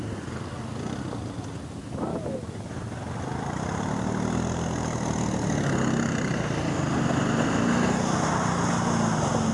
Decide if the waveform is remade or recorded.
recorded